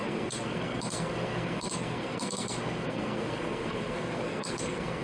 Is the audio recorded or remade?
remade